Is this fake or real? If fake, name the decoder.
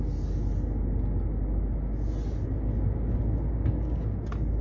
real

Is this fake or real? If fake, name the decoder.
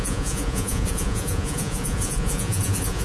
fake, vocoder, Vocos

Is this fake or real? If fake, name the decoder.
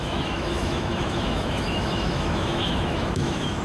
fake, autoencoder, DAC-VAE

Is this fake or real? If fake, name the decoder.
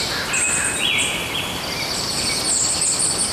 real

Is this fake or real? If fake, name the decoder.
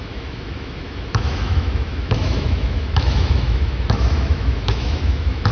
fake, autoencoder, DAC-VAE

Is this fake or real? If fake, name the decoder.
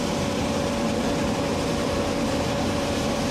fake, vocoder, BigVGAN v2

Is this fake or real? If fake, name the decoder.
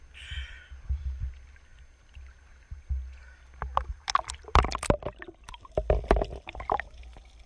real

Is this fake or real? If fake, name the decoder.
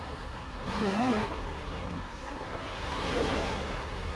fake, codec, SNAC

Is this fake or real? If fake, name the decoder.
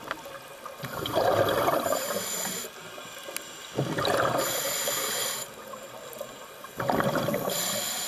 real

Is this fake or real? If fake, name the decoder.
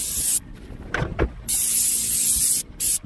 real